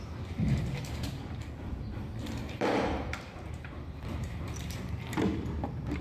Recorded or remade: remade